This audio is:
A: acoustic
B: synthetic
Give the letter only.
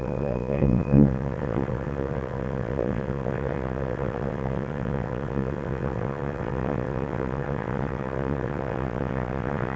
B